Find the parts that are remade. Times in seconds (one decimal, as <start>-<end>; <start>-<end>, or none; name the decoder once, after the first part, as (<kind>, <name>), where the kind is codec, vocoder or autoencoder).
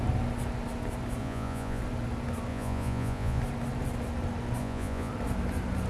1.2-1.8 (vocoder, Vocos); 2.5-3.4; 4.6-5.1